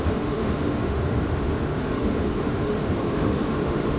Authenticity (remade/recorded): remade